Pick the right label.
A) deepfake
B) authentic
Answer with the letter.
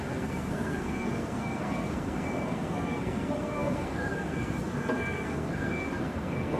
A